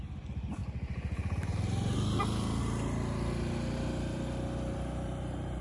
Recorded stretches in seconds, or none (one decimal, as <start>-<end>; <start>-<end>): 0.0-5.6